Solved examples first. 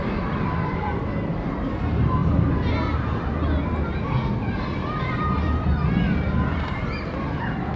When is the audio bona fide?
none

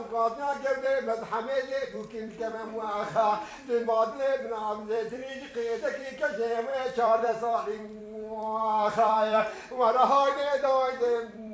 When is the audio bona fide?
5.2-5.8

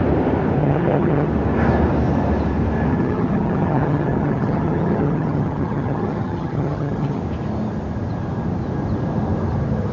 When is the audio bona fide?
0.0-0.6; 1.3-2.9; 7.2-9.9